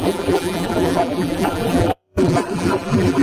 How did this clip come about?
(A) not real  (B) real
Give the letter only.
A